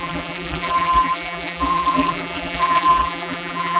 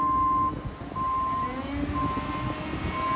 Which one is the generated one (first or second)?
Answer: first